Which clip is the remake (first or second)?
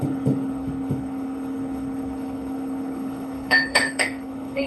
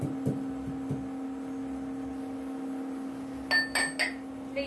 first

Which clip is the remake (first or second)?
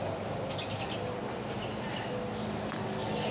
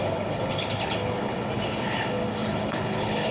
second